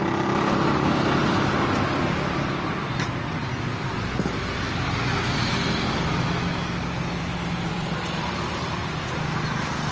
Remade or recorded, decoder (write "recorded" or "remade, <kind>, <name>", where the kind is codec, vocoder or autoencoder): recorded